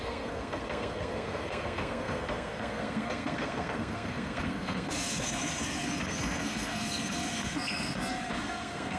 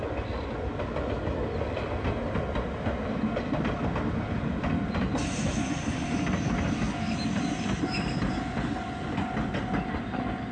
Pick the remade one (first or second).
first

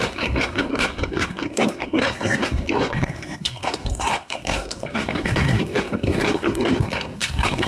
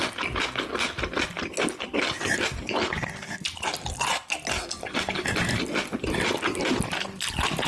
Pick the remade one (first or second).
first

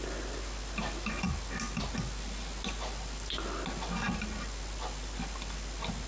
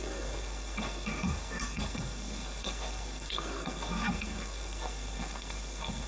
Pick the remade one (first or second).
second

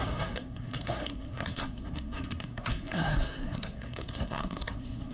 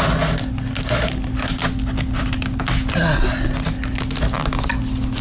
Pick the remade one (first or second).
first